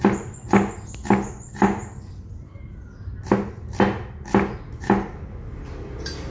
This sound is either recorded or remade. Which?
recorded